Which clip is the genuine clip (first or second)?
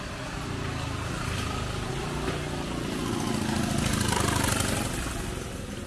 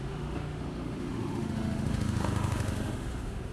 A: first